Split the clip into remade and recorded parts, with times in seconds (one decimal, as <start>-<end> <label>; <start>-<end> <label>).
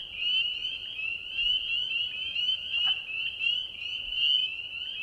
0.0-0.6 recorded; 0.6-1.3 remade; 1.3-2.3 recorded; 2.3-4.0 remade; 4.0-5.0 recorded